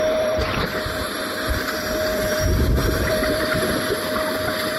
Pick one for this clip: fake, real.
fake